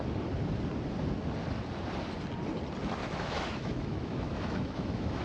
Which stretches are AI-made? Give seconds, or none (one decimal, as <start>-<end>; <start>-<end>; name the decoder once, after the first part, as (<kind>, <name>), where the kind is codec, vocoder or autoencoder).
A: 3.0-5.2 (autoencoder, DAC-VAE)